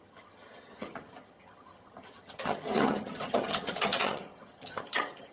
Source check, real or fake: fake